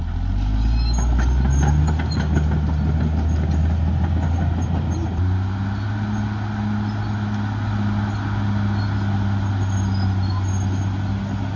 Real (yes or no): yes